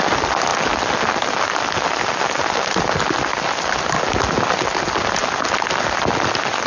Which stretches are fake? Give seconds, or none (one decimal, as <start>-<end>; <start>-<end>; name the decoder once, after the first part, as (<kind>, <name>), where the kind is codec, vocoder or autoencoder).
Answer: none